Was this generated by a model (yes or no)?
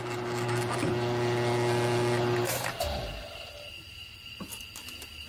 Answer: no